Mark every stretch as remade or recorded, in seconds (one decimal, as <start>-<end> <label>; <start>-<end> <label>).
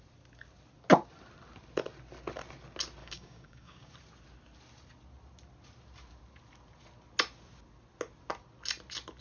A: 0.0-3.0 recorded; 3.0-3.9 remade; 3.9-9.2 recorded